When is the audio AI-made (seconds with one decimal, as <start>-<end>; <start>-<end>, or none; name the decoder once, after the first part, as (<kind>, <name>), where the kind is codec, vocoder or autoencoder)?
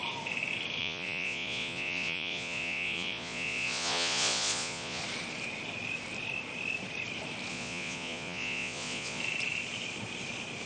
0.8-5.0 (vocoder, Vocos); 7.5-9.2